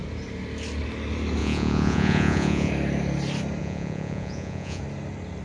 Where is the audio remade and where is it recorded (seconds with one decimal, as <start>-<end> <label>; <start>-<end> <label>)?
0.0-1.4 recorded; 1.4-2.7 remade; 2.7-3.6 recorded; 3.6-4.8 remade; 4.8-5.4 recorded